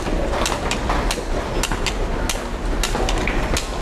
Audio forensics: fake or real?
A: real